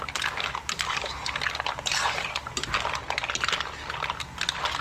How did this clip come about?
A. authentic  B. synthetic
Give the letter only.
A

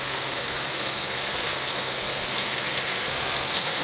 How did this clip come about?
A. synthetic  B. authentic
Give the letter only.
A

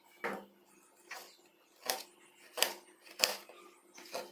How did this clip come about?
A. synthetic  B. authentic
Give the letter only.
B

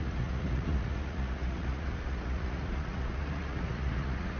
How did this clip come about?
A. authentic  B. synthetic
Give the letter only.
B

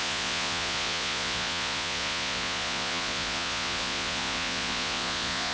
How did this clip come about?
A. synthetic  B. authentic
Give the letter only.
A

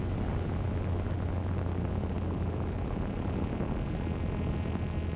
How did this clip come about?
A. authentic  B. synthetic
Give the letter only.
A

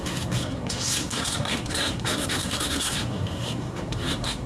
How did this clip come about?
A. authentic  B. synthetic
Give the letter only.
B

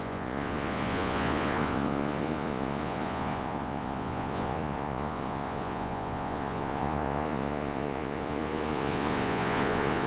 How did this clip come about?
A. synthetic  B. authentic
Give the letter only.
A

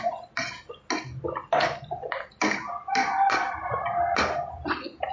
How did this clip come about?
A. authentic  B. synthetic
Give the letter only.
A